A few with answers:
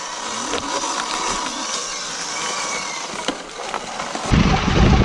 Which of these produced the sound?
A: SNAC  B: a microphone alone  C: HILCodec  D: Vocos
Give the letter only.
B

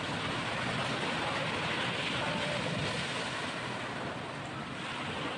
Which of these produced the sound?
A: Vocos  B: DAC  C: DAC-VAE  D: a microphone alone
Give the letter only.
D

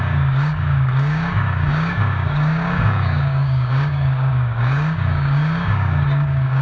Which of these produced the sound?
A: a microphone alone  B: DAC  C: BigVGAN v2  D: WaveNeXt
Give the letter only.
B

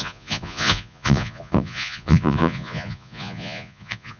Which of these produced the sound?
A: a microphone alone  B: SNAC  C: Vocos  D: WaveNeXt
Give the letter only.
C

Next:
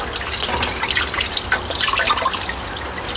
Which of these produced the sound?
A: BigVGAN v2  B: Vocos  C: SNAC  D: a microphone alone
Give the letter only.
D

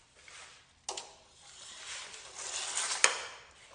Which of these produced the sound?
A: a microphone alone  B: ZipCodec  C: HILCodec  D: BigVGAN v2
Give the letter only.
A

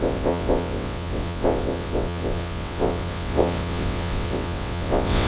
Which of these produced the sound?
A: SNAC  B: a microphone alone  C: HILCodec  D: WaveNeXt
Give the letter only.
D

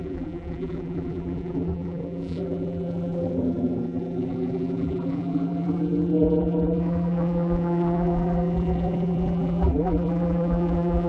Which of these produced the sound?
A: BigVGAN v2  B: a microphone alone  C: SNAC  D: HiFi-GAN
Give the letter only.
A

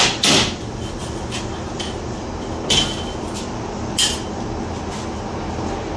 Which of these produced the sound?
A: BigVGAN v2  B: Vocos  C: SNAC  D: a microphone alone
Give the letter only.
D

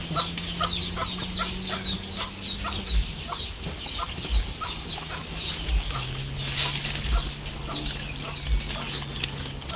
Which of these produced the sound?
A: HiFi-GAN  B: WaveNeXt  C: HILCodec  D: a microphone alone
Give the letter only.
D